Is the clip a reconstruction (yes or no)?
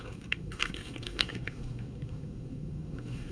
yes